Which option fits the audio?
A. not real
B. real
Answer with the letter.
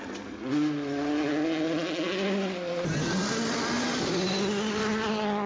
B